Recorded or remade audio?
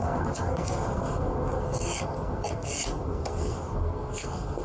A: remade